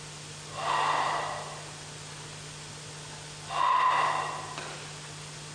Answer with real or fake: real